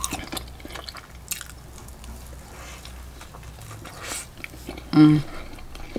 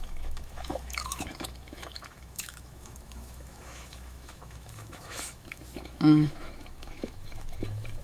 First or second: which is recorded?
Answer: first